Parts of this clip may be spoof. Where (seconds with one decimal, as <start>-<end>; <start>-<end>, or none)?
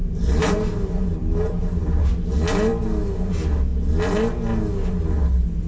0.0-2.1